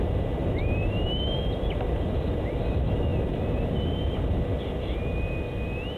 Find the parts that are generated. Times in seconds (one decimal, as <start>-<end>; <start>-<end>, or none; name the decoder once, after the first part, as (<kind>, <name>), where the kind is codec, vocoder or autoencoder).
0.4-2.4 (vocoder, BigVGAN v2)